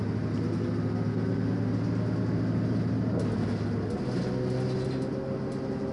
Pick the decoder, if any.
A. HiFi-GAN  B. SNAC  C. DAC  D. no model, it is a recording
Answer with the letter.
D